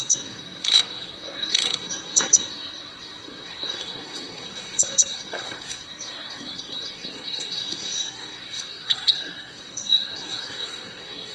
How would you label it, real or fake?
fake